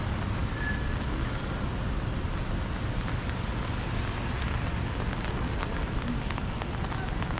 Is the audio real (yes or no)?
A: yes